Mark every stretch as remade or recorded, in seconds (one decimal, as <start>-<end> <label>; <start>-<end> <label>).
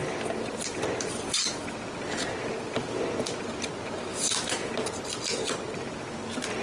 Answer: 0.0-4.1 recorded; 4.1-4.7 remade; 4.7-6.6 recorded